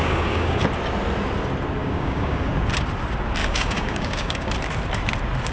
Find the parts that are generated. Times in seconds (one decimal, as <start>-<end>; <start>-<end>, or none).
0.0-0.6; 1.8-2.5; 3.4-4.5